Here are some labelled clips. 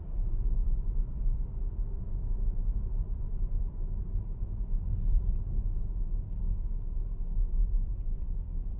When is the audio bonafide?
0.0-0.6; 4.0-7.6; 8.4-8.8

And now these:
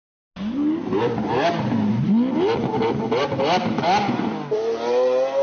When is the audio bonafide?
0.0-5.4

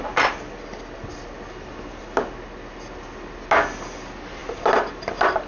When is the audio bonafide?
0.0-5.5

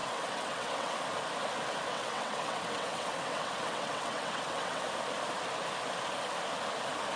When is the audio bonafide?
1.0-1.9; 4.9-7.2